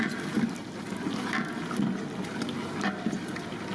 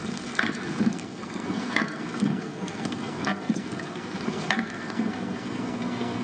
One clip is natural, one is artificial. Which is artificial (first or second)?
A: second